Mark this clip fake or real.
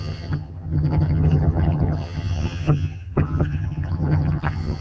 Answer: fake